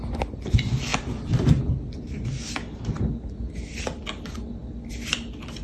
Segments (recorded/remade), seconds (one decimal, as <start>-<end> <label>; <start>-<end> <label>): 0.0-5.6 recorded